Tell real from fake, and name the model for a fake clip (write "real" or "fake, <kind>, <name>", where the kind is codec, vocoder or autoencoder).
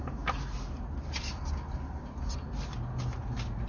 real